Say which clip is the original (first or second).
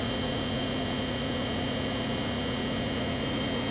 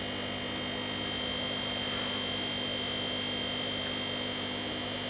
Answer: second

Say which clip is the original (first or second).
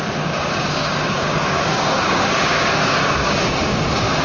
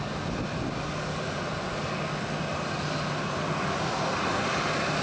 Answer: second